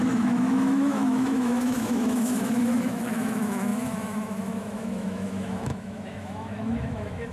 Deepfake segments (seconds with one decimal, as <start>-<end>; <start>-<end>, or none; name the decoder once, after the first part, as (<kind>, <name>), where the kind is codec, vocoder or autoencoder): 0.0-7.3 (autoencoder, DAC-VAE)